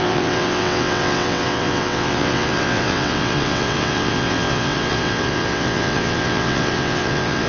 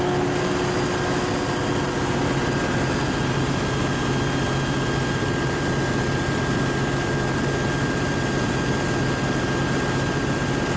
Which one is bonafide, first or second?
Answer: second